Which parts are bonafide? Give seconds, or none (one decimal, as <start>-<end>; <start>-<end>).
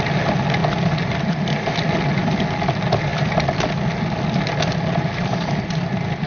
0.0-6.3